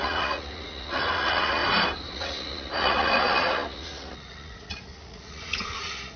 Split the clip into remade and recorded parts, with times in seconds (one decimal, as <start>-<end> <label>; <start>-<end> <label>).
0.0-1.6 remade; 1.6-2.1 recorded; 2.1-6.2 remade